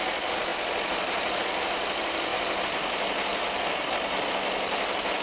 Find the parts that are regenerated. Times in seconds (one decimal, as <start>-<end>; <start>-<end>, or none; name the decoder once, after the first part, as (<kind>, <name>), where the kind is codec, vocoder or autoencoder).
none